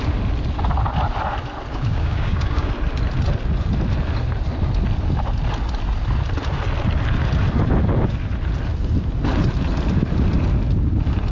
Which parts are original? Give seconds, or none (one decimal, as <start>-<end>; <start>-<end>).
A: 0.0-1.7; 2.7-11.3